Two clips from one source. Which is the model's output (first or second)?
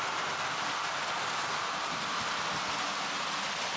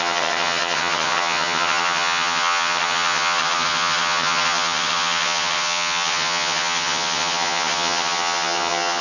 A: second